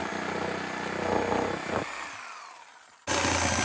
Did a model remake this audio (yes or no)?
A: no